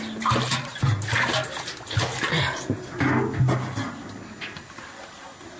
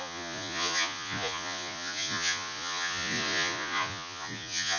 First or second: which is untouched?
first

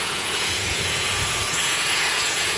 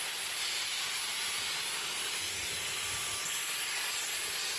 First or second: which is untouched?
second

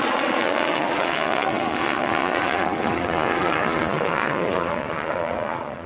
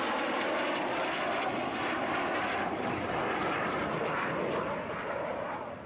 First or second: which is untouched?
second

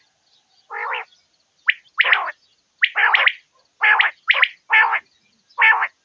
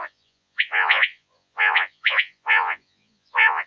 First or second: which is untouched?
first